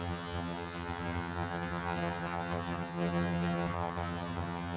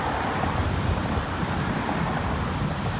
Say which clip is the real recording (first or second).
second